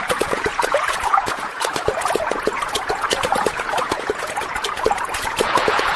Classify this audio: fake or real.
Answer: fake